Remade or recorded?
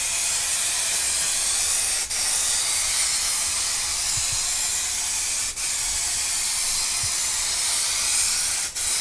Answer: recorded